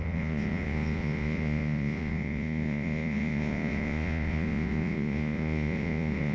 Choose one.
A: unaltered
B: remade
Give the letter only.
B